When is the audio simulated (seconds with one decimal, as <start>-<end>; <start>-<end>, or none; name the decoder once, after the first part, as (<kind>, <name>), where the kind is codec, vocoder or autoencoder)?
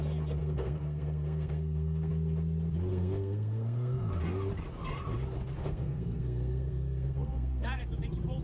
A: 0.4-2.1 (codec, SNAC); 2.9-4.1; 5.6-7.8